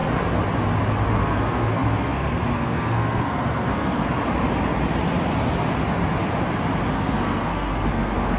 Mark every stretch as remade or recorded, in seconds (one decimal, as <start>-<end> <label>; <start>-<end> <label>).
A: 0.0-1.1 recorded; 1.1-4.0 remade; 4.0-6.9 recorded; 6.9-8.4 remade